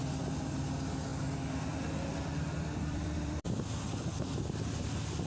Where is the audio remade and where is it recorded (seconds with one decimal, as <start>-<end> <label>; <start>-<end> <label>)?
0.0-2.1 recorded; 2.1-4.4 remade; 4.4-5.3 recorded

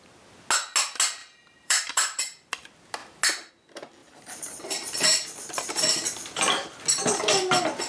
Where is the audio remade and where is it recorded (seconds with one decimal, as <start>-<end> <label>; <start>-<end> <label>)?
0.0-1.2 recorded; 1.2-2.5 remade; 2.5-4.0 recorded; 4.0-5.6 remade; 5.6-7.9 recorded

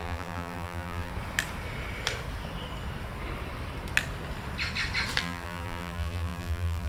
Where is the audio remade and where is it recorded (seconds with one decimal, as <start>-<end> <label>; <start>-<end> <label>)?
0.0-1.1 remade; 1.1-5.2 recorded; 5.2-6.9 remade

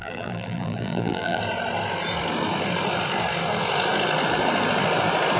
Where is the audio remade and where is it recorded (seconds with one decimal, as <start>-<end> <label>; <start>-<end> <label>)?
0.0-1.4 remade; 1.4-5.4 recorded

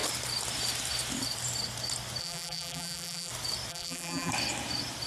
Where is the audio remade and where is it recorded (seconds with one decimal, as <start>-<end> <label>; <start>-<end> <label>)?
0.0-2.2 recorded; 2.2-3.3 remade; 3.3-3.7 recorded; 3.7-4.3 remade; 4.3-5.1 recorded

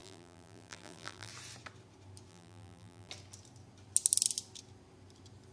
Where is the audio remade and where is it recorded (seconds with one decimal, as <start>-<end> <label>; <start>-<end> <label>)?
0.0-1.3 remade; 1.3-2.3 recorded; 2.3-3.1 remade; 3.1-5.5 recorded

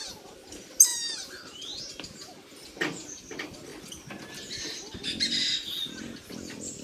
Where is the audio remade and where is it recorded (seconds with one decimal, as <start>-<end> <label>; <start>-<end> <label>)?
0.0-0.9 recorded; 0.9-1.8 remade; 1.8-6.8 recorded